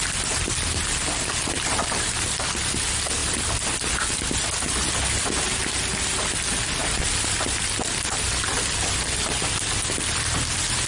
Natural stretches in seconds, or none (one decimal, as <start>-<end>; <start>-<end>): 0.0-10.9